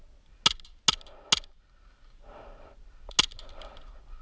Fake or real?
real